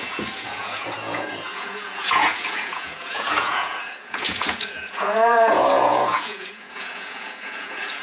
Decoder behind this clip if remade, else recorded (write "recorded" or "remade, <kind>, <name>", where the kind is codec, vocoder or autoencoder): remade, vocoder, Vocos